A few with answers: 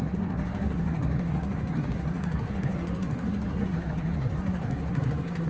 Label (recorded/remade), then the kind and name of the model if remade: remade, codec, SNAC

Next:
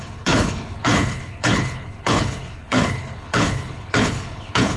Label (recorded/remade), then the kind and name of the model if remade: remade, codec, HILCodec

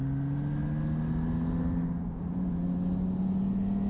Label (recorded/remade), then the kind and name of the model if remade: recorded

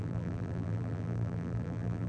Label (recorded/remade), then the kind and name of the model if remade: remade, vocoder, BigVGAN v2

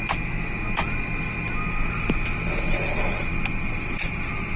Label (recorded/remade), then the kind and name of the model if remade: recorded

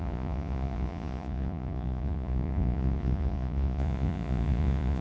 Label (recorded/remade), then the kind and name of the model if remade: remade, vocoder, Vocos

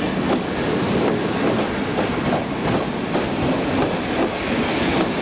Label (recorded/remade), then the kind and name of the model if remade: recorded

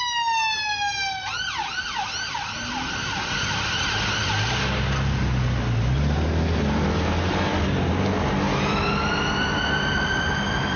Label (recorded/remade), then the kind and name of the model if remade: recorded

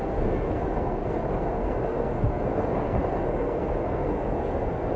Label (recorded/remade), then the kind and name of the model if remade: remade, codec, SNAC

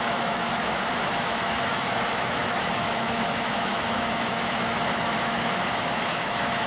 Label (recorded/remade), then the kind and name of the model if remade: remade, autoencoder, DAC-VAE